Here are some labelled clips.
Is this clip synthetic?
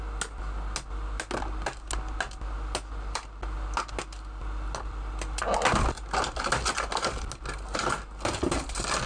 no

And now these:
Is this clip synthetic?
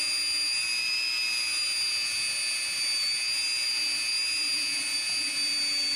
no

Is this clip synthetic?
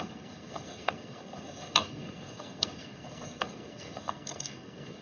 yes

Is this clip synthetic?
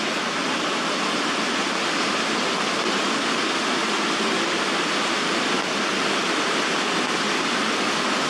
no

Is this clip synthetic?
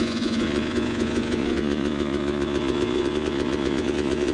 yes